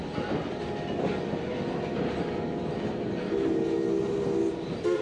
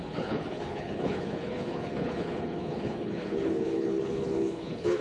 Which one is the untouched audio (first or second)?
first